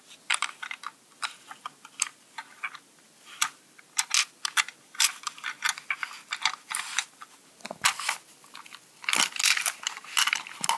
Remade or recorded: recorded